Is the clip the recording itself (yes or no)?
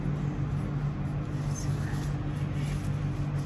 yes